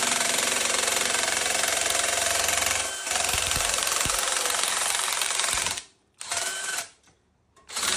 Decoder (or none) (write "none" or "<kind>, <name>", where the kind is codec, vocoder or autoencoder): vocoder, BigVGAN v2